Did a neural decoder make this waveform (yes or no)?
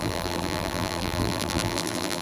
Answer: yes